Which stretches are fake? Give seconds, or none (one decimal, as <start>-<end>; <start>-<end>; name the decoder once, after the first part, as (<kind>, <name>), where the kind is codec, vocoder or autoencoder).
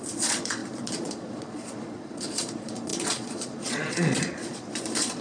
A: 0.0-5.2 (vocoder, Vocos)